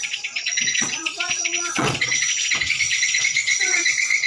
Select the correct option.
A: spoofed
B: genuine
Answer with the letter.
A